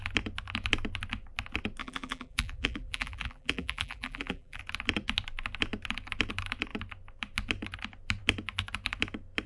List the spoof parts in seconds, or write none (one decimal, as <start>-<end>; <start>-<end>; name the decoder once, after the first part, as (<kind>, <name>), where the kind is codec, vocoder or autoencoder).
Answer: 1.8-4.6 (vocoder, BigVGAN v2)